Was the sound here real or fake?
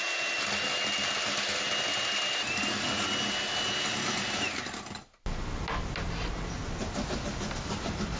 real